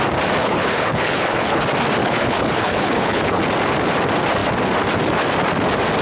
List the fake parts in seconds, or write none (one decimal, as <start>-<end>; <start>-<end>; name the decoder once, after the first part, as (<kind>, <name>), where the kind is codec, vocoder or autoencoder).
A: 0.4-1.6 (codec, HILCodec); 2.0-3.4